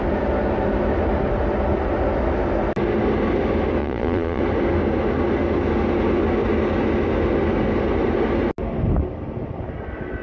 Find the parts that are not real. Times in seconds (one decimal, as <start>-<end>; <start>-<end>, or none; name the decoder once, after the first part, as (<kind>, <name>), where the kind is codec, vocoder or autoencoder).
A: 3.8-4.4 (vocoder, Vocos)